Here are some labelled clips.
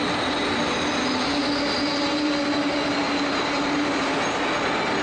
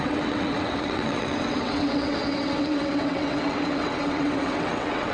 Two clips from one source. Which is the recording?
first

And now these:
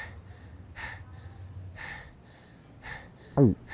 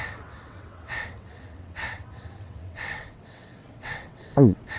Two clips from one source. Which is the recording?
first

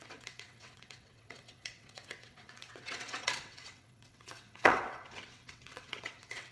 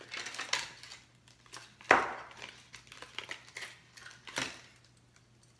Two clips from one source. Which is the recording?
second